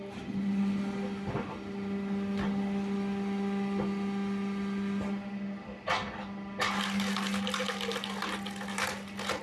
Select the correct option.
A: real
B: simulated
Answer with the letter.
A